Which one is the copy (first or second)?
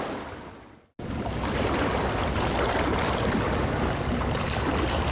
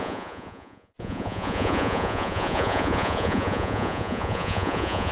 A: second